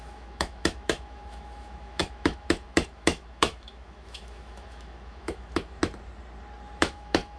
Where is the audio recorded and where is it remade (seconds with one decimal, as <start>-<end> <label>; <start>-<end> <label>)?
0.0-5.8 remade; 5.8-6.8 recorded; 6.8-7.4 remade

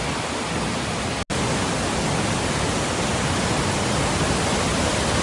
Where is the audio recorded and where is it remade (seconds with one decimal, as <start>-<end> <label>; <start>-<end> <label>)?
0.0-5.2 recorded

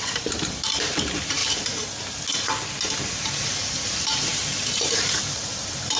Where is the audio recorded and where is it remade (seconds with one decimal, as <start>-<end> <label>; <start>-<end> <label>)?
0.0-1.4 remade; 1.4-3.1 recorded; 3.1-6.0 remade

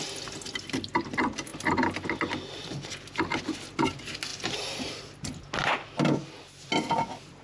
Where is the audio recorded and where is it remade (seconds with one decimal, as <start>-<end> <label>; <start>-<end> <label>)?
0.0-7.4 recorded